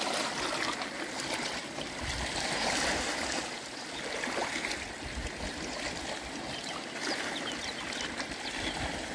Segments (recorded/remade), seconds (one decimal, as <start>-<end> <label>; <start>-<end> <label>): 0.0-9.1 recorded